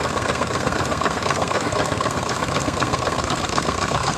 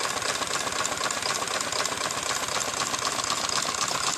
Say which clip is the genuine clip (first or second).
second